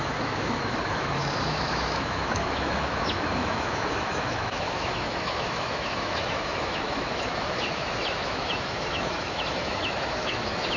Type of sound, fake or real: fake